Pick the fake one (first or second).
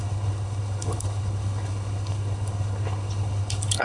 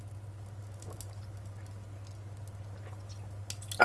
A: first